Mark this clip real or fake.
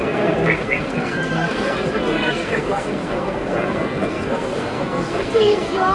fake